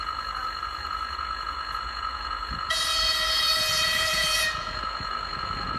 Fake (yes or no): yes